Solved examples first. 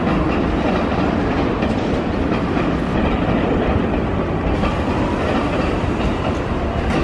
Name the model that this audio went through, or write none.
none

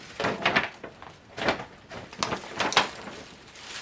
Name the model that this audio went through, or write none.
none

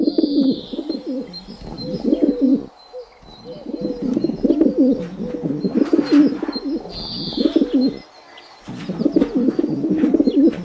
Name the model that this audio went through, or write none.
none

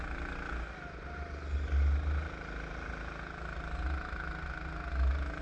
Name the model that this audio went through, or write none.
none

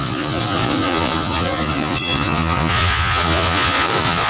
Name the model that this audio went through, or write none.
vocoder, Vocos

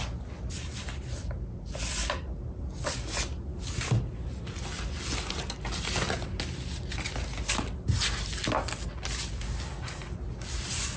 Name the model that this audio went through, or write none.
none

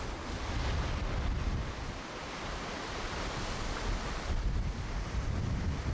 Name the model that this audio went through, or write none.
none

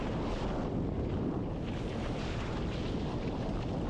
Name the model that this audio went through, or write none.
none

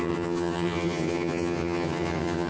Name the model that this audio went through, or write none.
vocoder, HiFi-GAN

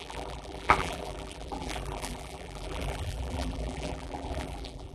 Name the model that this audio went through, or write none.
vocoder, BigVGAN v2